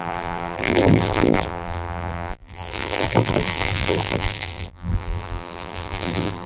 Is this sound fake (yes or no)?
yes